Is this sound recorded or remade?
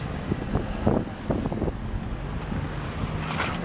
recorded